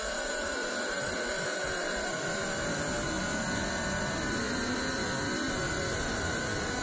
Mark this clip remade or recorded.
recorded